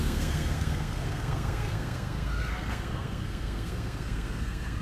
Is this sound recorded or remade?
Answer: remade